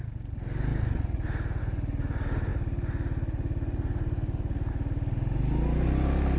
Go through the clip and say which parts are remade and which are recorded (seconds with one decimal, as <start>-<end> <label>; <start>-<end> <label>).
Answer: 0.0-6.4 recorded